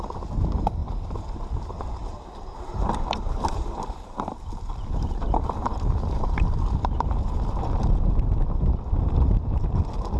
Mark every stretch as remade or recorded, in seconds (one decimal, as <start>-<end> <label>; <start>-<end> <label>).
0.0-2.0 recorded; 2.0-6.6 remade; 6.6-10.2 recorded